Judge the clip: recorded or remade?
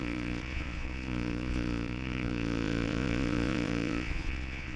remade